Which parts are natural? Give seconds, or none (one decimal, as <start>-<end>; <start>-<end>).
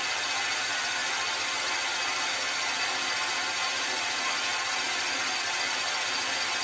0.0-6.6